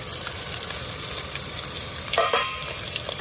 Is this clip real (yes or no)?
yes